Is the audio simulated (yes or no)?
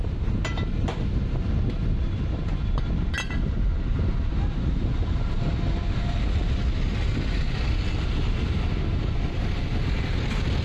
no